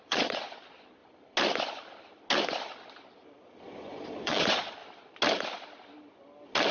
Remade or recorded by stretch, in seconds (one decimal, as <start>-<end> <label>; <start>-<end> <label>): 0.0-1.0 remade; 1.0-3.6 recorded; 3.6-4.8 remade; 4.8-6.7 recorded